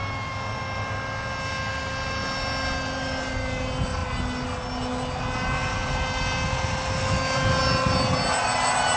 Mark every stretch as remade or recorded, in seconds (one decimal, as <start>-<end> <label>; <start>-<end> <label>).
0.0-9.0 recorded